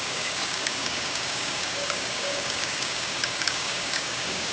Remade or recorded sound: remade